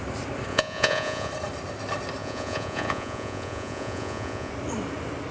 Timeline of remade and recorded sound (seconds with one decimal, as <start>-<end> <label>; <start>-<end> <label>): 0.0-0.5 recorded; 0.5-1.3 remade; 1.3-2.2 recorded; 2.2-4.5 remade; 4.5-5.3 recorded